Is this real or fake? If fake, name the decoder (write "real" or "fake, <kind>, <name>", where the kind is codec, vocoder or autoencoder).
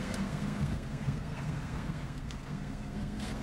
fake, codec, SNAC